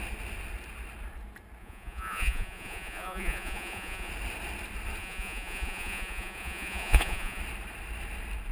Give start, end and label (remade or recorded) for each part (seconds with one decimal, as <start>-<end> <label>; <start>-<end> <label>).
0.0-1.6 recorded; 1.6-4.1 remade; 4.1-5.0 recorded; 5.0-7.4 remade; 7.4-8.5 recorded